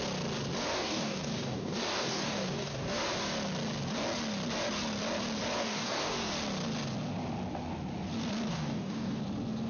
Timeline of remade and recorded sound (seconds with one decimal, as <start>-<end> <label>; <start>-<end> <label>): 0.0-0.8 recorded; 0.8-3.0 remade; 3.0-5.6 recorded; 5.6-6.1 remade; 6.1-8.5 recorded; 8.5-9.2 remade; 9.2-9.7 recorded